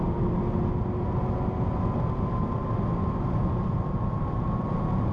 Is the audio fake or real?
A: real